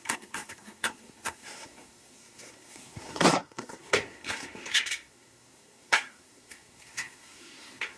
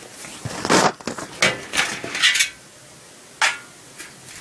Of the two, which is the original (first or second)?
second